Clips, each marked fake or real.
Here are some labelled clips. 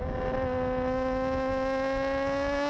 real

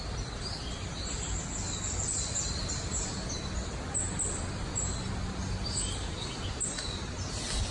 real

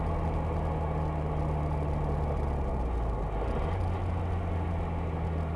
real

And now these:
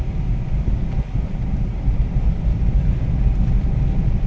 real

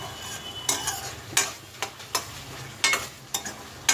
real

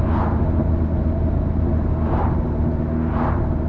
real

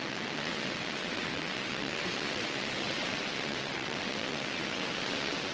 fake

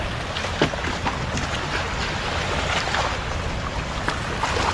real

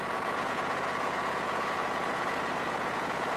fake